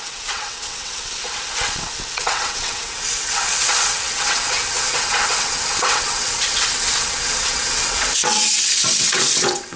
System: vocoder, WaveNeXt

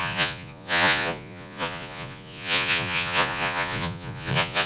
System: vocoder, Vocos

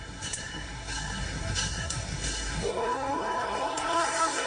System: codec, SNAC